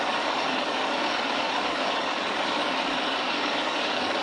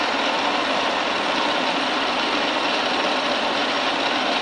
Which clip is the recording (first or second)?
second